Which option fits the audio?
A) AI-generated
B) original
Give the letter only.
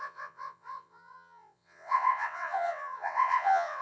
A